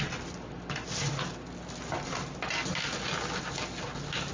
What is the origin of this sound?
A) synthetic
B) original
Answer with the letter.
B